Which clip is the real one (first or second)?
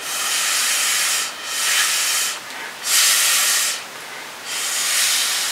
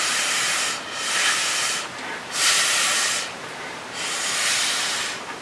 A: first